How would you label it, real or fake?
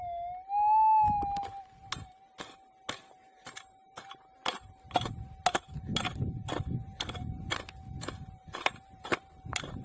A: real